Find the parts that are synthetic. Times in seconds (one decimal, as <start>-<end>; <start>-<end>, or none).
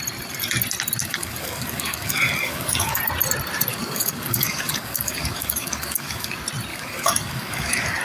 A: 1.0-3.0; 3.7-6.3; 6.7-8.0